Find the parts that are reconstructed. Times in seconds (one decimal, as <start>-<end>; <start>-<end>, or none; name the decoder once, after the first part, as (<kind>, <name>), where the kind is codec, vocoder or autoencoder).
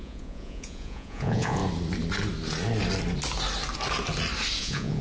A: 0.0-1.6 (vocoder, Vocos); 4.6-5.0